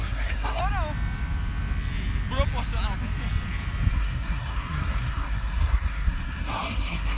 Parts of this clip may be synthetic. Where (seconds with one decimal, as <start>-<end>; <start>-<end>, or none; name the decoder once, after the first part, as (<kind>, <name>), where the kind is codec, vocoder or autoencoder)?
0.0-0.6 (codec, SNAC); 3.9-7.2